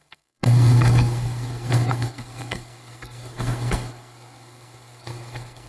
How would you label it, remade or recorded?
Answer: remade